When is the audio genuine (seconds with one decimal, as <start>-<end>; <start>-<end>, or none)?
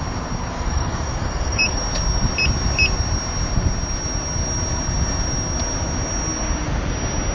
0.0-0.5; 1.8-7.3